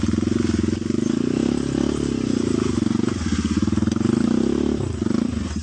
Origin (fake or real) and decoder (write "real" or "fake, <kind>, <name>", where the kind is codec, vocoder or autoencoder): real